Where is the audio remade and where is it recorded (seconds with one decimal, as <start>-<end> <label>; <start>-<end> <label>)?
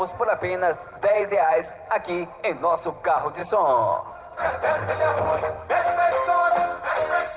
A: 0.0-0.8 recorded; 0.8-1.9 remade; 1.9-7.4 recorded